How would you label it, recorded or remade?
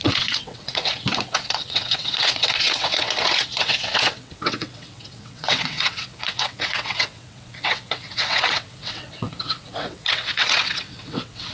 remade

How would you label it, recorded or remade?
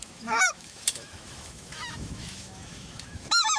remade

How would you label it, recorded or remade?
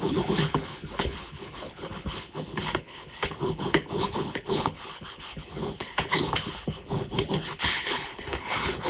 remade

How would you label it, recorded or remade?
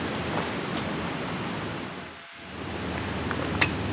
recorded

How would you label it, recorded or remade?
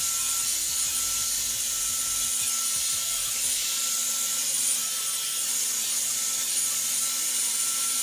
remade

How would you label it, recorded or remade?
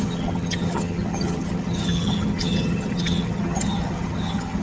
remade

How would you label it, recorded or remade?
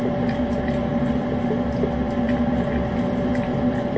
recorded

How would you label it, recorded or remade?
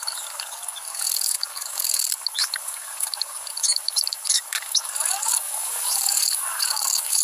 remade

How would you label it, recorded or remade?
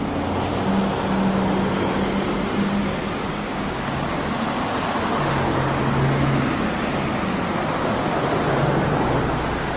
recorded